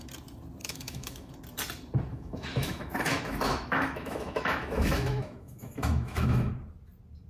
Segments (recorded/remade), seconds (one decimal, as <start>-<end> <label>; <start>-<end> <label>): 0.0-0.6 recorded; 0.6-1.3 remade; 1.3-2.1 recorded; 2.1-6.5 remade; 6.5-7.3 recorded

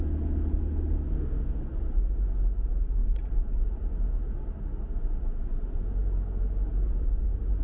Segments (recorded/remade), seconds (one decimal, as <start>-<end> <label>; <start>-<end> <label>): 0.0-1.1 recorded; 1.1-1.6 remade; 1.6-7.6 recorded

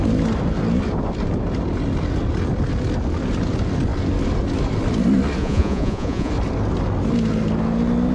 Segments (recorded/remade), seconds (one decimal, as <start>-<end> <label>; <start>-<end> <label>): 0.0-5.4 recorded; 5.4-6.3 remade; 6.3-8.1 recorded

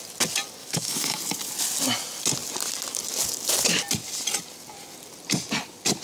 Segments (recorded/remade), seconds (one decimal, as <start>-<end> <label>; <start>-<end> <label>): 0.0-0.6 recorded; 0.6-1.2 remade; 1.2-6.0 recorded